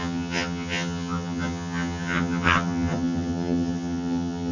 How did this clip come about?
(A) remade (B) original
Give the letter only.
A